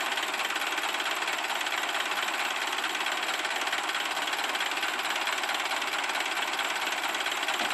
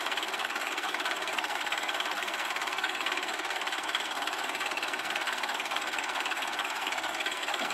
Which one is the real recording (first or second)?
first